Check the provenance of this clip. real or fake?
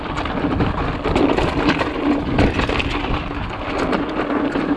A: real